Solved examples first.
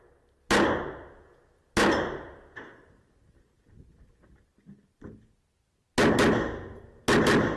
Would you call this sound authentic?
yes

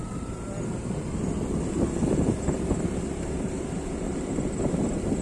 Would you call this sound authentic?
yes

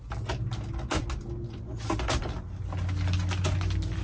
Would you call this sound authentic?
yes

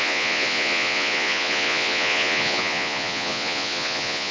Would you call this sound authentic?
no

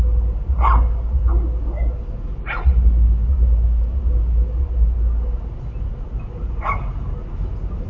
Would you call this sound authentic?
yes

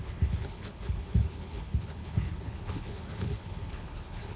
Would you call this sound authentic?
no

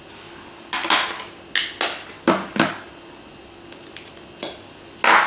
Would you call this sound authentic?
yes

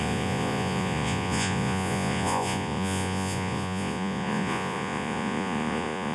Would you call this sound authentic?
no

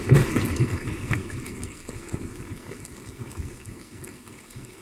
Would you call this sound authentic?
no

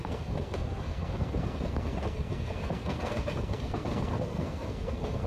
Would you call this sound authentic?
no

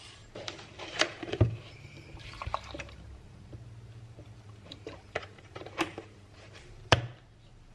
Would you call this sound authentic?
no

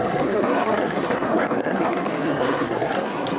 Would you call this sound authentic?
no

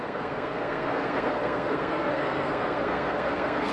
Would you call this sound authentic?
no